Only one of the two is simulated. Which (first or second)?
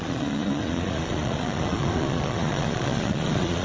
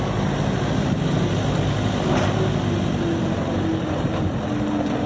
first